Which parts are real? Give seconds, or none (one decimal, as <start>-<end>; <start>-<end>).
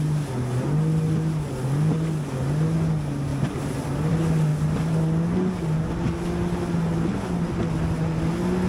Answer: 0.0-3.3; 4.1-8.7